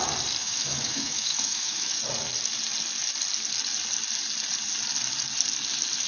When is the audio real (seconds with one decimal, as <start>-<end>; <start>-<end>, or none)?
0.0-0.4; 2.0-6.1